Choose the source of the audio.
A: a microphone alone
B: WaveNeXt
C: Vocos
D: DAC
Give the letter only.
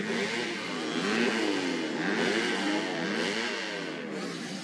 A